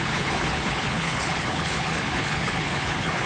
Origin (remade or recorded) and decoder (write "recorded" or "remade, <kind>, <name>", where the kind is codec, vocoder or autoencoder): remade, codec, HILCodec